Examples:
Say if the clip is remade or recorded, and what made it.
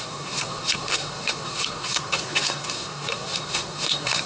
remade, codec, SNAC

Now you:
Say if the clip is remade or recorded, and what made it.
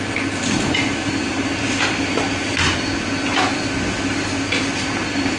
recorded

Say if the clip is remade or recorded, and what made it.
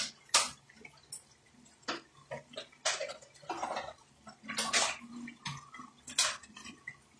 recorded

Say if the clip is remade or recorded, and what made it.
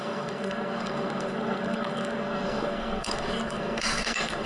remade, codec, SNAC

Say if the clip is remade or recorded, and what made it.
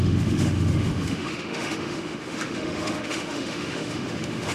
remade, autoencoder, DAC-VAE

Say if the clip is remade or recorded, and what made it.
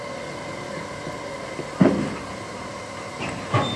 recorded